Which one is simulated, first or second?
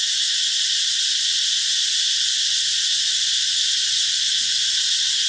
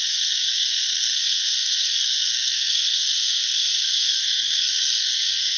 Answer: second